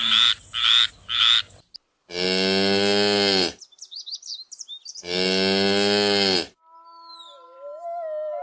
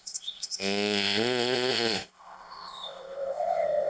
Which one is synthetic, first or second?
second